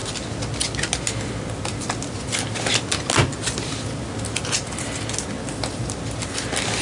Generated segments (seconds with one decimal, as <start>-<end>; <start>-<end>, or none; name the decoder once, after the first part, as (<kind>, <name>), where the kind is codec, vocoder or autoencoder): none